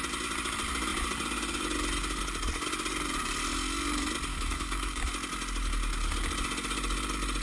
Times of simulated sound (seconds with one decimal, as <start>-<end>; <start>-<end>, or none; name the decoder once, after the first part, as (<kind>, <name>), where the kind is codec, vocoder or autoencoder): 4.3-5.1 (autoencoder, DAC-VAE)